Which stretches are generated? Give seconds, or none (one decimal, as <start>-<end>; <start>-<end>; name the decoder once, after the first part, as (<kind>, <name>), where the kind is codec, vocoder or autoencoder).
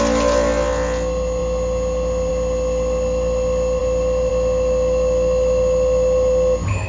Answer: none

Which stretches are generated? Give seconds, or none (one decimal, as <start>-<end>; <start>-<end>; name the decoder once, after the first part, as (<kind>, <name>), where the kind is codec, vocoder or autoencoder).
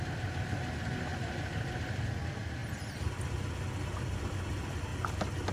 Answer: none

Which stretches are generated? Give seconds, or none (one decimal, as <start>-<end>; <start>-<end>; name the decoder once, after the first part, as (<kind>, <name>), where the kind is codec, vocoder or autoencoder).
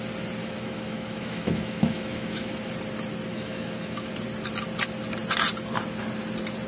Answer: 0.4-2.5 (autoencoder, DAC-VAE); 3.3-4.1